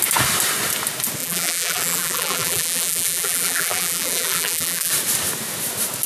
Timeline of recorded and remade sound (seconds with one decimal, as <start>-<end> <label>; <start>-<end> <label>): 0.0-1.2 recorded; 1.2-4.9 remade; 4.9-6.1 recorded